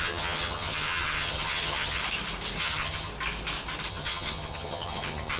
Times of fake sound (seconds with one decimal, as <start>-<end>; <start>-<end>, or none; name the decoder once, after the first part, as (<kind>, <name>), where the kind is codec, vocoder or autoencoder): 0.0-2.0 (vocoder, HiFi-GAN); 2.6-3.1; 3.9-5.4